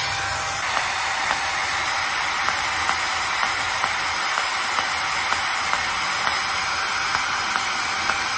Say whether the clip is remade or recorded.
recorded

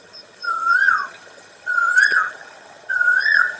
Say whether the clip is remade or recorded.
remade